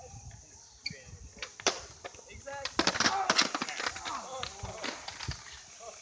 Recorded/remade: recorded